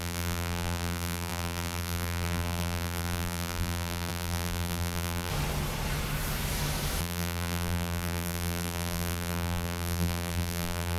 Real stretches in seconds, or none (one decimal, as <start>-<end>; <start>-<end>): 5.3-7.0